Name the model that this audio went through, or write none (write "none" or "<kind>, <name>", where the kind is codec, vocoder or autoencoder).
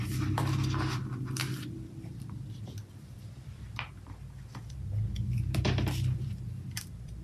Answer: vocoder, BigVGAN v2